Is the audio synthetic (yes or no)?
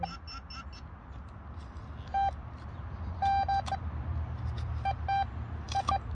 no